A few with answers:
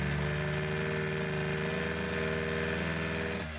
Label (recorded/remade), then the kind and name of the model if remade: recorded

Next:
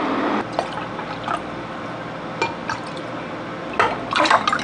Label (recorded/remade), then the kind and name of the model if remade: recorded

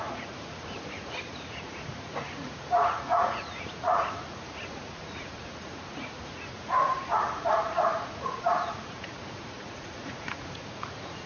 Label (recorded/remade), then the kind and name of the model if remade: remade, vocoder, Vocos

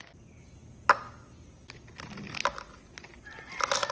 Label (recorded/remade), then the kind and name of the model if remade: recorded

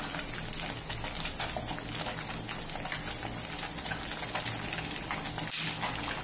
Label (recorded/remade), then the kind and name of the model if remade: recorded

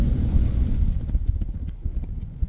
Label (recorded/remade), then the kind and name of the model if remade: remade, vocoder, Vocos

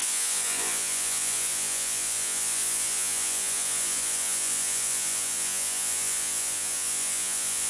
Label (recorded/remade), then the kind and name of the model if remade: remade, vocoder, Vocos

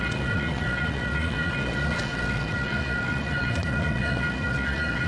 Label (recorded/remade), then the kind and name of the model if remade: remade, vocoder, Vocos